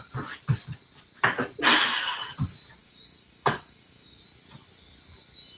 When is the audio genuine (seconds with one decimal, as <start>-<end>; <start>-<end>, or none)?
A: 0.0-2.8; 4.2-5.6